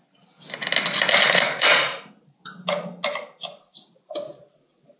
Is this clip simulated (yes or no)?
no